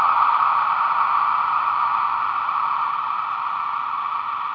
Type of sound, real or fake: real